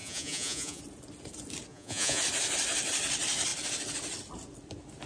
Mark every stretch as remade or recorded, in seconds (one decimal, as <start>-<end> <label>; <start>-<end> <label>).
0.0-0.8 remade; 0.8-1.7 recorded; 1.7-2.2 remade; 2.2-5.1 recorded